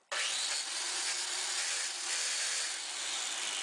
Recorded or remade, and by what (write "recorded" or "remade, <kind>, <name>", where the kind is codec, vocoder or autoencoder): recorded